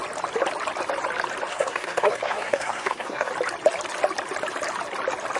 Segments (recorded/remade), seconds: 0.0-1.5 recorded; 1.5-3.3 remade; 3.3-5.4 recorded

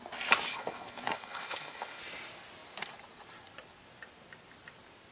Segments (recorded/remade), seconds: 0.0-0.5 recorded; 0.5-2.0 remade; 2.0-5.1 recorded